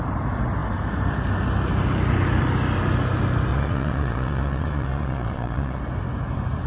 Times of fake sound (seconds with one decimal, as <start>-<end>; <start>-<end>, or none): 3.5-5.8